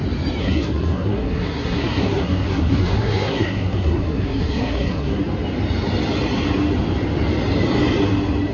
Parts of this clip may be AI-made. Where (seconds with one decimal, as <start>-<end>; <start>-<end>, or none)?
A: 0.4-5.2